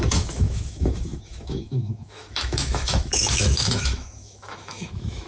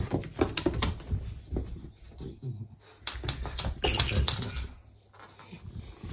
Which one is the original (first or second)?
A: second